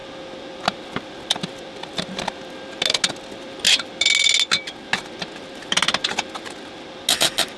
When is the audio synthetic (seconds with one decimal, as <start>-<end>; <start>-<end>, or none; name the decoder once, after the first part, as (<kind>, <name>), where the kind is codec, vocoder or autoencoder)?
none

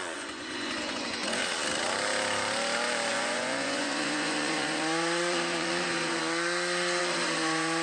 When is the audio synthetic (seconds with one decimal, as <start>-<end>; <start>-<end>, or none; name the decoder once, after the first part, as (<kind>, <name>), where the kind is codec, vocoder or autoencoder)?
0.0-1.4 (vocoder, Vocos); 3.1-6.2; 7.0-7.8